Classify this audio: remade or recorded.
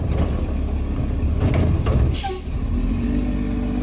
recorded